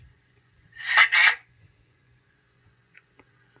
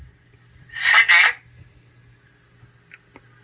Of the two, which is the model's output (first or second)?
first